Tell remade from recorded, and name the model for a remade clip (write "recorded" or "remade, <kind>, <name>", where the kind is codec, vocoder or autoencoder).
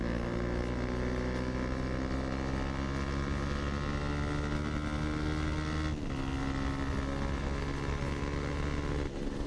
recorded